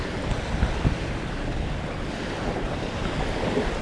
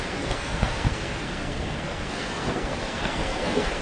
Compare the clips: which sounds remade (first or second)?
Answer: second